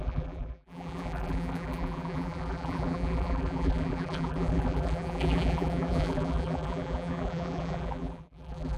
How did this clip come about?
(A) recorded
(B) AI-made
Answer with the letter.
B